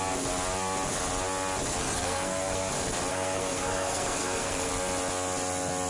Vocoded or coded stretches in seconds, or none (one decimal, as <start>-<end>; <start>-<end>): 1.8-2.7; 3.1-4.7